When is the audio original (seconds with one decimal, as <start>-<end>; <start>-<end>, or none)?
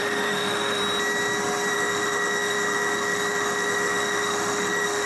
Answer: 0.8-1.7